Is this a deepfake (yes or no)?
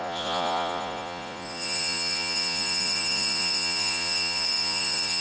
yes